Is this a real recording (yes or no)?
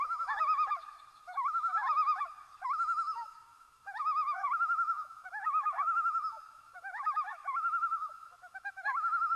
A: no